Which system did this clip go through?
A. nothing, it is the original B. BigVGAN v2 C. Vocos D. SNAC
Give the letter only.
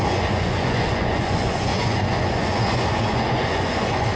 C